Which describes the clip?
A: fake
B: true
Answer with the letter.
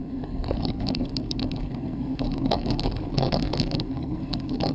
A